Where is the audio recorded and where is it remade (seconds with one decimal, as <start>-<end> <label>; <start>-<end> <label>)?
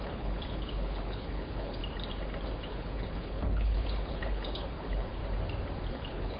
0.0-1.8 remade; 1.8-2.6 recorded; 2.6-5.2 remade; 5.2-5.9 recorded; 5.9-6.4 remade